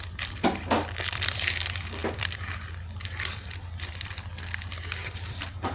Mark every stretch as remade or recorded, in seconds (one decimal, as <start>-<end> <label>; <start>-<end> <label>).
0.0-5.7 remade